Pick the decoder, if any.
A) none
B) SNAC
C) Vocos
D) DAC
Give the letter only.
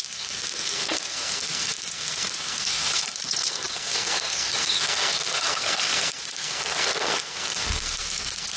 B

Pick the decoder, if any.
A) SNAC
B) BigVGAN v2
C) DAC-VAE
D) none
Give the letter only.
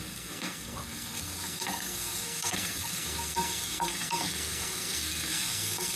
A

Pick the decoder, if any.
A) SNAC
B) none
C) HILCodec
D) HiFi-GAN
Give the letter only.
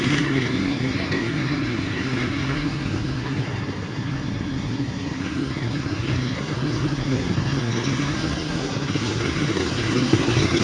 A